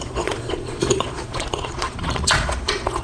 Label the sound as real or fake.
fake